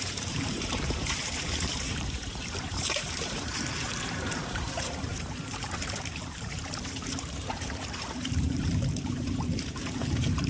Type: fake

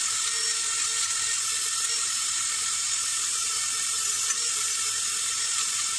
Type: real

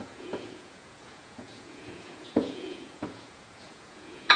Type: fake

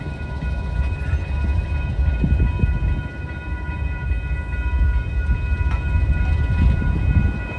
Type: real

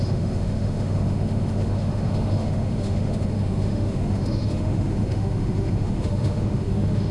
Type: fake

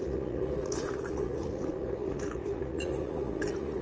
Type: fake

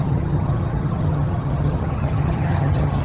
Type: fake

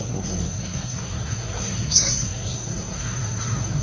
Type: fake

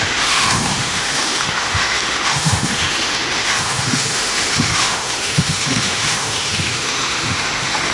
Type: fake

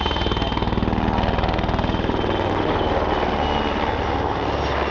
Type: real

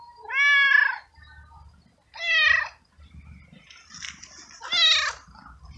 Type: real